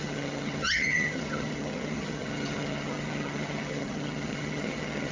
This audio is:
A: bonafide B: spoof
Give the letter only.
B